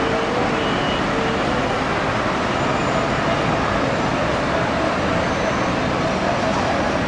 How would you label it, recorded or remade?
recorded